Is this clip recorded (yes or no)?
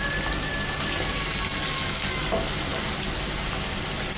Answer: yes